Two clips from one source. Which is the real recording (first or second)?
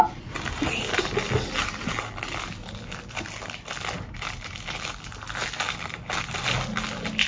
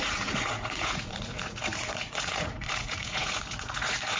first